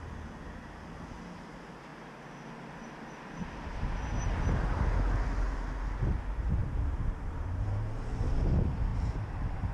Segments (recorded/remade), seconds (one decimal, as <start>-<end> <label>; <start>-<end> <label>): 0.0-6.6 recorded; 6.6-8.4 remade; 8.4-8.9 recorded; 8.9-9.7 remade